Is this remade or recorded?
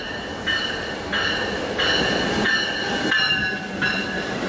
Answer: recorded